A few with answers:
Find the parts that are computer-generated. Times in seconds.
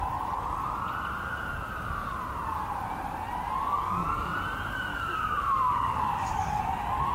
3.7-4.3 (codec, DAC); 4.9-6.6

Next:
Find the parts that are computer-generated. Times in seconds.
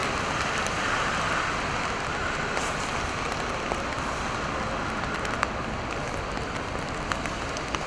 none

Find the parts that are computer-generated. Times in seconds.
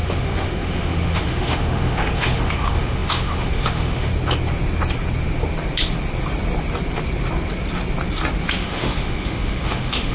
0.0-4.1 (autoencoder, DAC-VAE); 8.4-10.1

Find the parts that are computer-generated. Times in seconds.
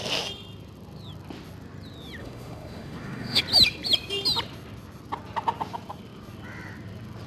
2.2-3.4 (autoencoder, DAC-VAE)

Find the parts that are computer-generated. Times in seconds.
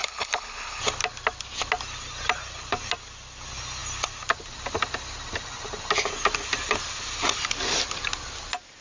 0.0-0.8 (codec, HILCodec)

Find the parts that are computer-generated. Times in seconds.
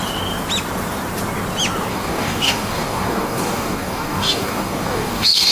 1.9-5.5 (codec, DAC)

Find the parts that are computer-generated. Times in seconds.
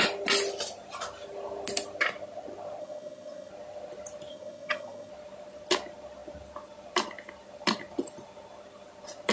2.8-3.5 (vocoder, HiFi-GAN); 4.3-5.1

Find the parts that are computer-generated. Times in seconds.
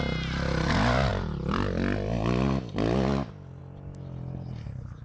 none